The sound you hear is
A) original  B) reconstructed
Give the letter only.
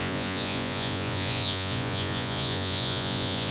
B